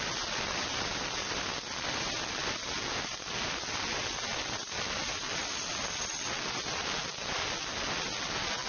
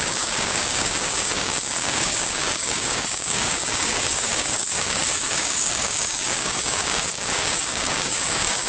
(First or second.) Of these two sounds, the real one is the first